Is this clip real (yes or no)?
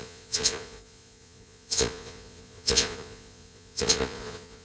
no